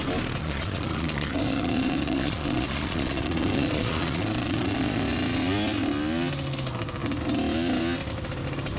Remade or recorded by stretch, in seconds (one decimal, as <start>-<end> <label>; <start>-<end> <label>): 0.0-0.4 recorded; 0.4-5.0 remade; 5.0-8.8 recorded